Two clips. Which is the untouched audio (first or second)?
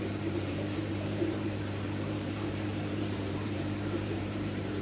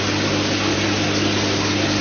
second